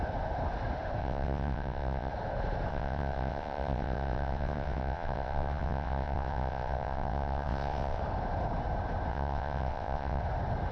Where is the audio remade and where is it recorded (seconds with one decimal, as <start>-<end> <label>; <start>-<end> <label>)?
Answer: 0.0-1.0 recorded; 1.0-2.1 remade; 2.1-2.7 recorded; 2.7-8.0 remade; 8.0-9.1 recorded; 9.1-10.2 remade; 10.2-10.7 recorded